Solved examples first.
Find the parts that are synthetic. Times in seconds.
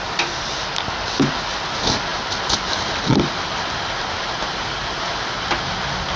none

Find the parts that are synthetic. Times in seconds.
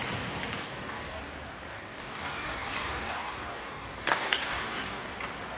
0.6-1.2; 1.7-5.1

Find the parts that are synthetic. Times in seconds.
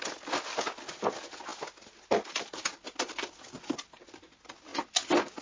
none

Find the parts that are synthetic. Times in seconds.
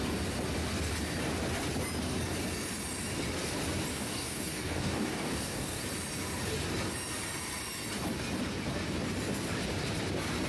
3.9-5.8